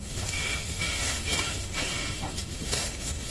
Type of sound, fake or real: fake